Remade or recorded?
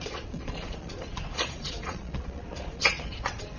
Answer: remade